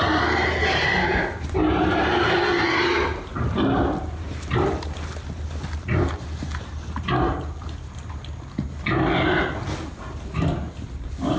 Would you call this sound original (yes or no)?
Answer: yes